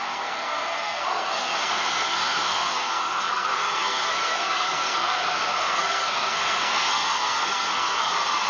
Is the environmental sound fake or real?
fake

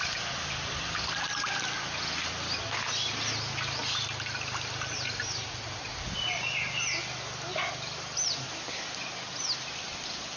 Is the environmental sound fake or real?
real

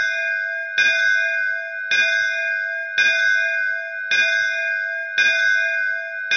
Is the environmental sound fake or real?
real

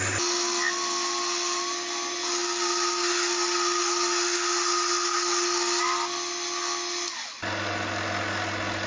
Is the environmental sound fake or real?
real